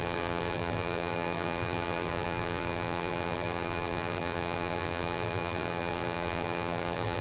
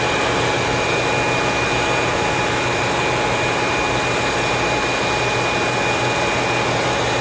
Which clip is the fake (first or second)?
first